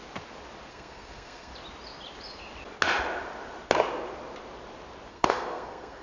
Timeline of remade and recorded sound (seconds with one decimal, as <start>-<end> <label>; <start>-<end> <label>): 0.0-0.7 recorded; 0.7-1.5 remade; 1.5-5.1 recorded; 5.1-6.0 remade